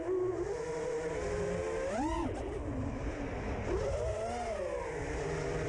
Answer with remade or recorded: recorded